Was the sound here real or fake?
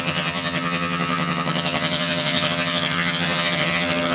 fake